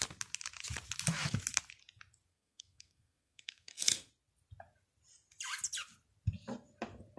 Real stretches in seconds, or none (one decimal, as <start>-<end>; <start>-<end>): 0.0-2.3; 4.1-7.2